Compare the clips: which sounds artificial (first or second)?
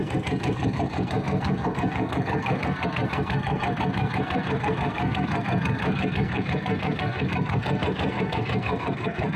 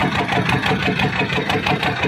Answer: first